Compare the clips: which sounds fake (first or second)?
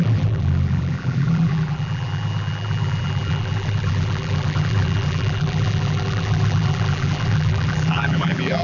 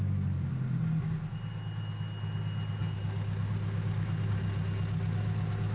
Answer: first